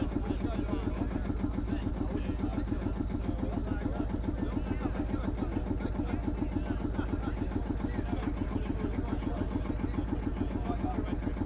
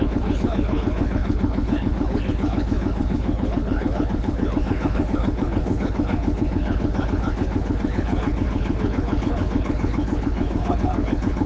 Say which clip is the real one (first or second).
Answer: first